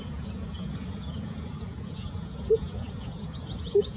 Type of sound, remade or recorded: remade